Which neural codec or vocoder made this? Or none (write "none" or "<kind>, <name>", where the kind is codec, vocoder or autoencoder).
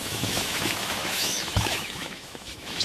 autoencoder, DAC-VAE